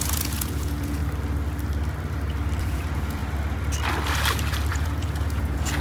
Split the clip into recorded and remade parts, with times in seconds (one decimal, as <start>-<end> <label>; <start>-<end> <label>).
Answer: 0.0-1.0 remade; 1.0-2.6 recorded; 2.6-3.2 remade; 3.2-4.7 recorded; 4.7-5.8 remade